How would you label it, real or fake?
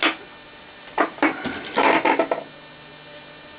real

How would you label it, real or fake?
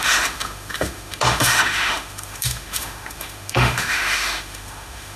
fake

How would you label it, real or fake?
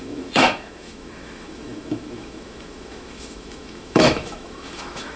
fake